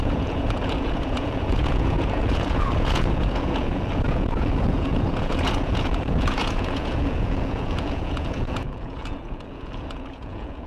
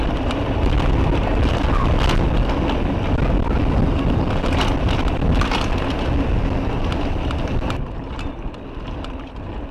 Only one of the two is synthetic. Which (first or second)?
first